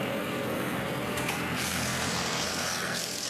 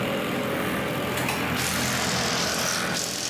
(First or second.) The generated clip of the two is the first